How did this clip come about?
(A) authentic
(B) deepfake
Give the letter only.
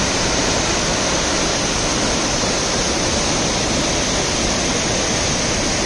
A